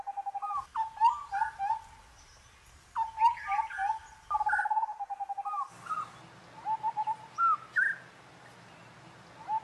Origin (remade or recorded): recorded